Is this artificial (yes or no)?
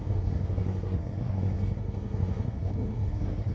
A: yes